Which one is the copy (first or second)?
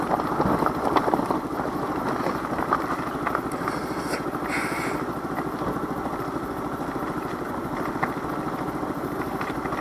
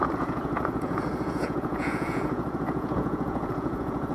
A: second